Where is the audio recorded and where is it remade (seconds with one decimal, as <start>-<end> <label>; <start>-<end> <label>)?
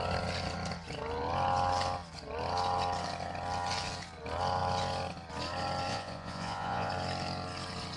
0.0-5.9 recorded; 5.9-6.9 remade; 6.9-8.0 recorded